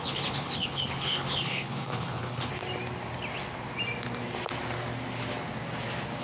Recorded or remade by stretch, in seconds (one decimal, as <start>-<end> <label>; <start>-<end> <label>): 0.0-2.5 remade; 2.5-6.2 recorded